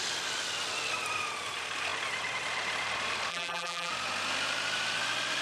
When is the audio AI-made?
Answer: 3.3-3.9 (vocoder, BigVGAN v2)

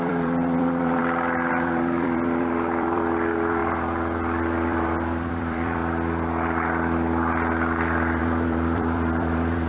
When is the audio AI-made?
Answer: 0.0-1.0 (vocoder, BigVGAN v2); 1.5-5.8; 8.2-9.7

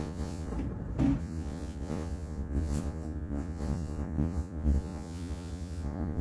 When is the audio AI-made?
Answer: 0.0-0.5 (vocoder, Vocos); 1.2-6.2